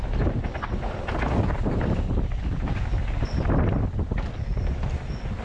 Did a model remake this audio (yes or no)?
no